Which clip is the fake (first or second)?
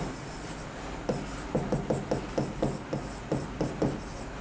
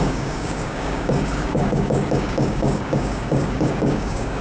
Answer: second